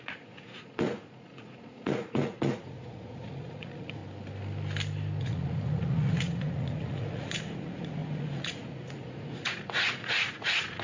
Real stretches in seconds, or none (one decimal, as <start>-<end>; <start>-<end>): 4.0-5.2